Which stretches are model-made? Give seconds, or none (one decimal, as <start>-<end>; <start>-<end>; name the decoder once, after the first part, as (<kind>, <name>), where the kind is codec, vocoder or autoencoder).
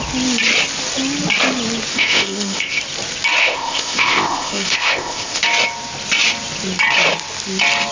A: 1.9-2.8 (codec, ZipCodec); 3.4-5.4